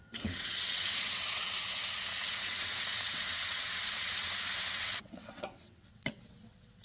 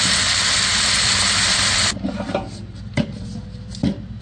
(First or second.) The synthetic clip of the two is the first